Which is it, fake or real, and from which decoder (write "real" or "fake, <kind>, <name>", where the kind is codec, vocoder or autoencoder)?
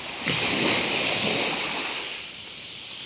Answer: real